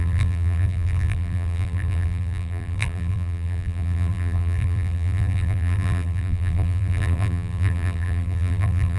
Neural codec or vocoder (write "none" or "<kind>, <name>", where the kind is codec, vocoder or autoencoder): vocoder, BigVGAN v2